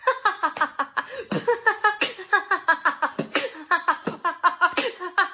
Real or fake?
real